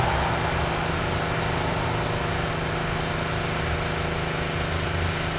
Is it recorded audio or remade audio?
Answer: recorded